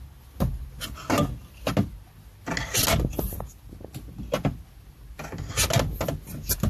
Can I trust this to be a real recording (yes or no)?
yes